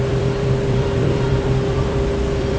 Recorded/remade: remade